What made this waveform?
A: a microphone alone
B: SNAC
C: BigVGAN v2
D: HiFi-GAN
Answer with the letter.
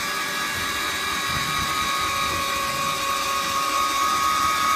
A